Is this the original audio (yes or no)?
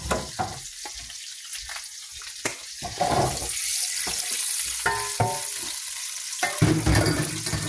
yes